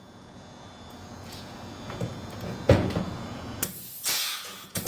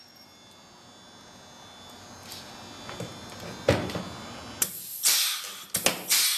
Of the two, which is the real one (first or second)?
second